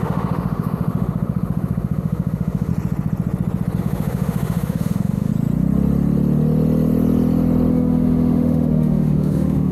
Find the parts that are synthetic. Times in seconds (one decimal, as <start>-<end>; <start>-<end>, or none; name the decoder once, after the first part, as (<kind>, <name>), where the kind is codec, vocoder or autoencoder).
0.0-2.7 (autoencoder, DAC-VAE); 3.8-5.3; 7.7-9.7